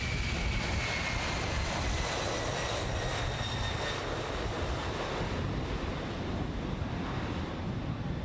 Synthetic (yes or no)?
no